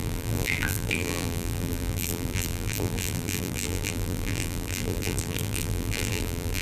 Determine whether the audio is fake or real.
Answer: fake